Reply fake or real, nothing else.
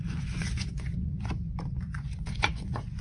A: fake